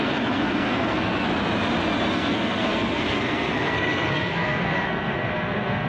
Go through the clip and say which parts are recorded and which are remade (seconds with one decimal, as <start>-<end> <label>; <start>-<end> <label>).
0.0-1.3 remade; 1.3-2.1 recorded; 2.1-5.9 remade